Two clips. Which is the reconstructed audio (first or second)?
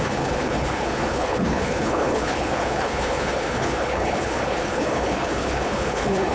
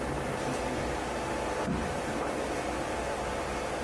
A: first